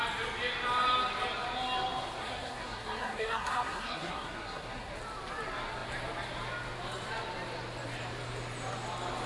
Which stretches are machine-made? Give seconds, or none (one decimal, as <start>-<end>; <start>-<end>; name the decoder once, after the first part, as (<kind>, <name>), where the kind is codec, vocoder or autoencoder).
2.2-4.9 (codec, SNAC)